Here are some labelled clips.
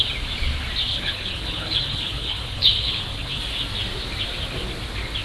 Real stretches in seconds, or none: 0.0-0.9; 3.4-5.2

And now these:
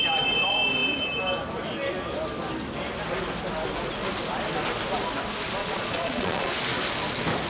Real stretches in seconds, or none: 0.0-5.6; 6.5-7.5

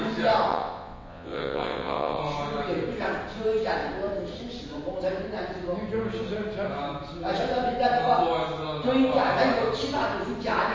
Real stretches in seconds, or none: 0.0-0.5; 2.2-10.7

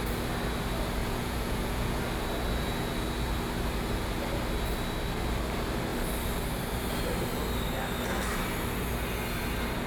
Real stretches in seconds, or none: 0.0-1.0; 2.0-9.9